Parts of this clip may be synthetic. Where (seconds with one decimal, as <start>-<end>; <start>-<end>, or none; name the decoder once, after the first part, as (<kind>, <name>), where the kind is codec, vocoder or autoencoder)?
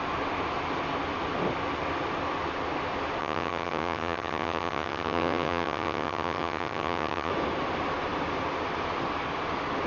3.2-7.3 (vocoder, HiFi-GAN)